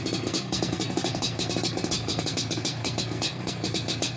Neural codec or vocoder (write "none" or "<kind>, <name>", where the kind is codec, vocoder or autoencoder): codec, SNAC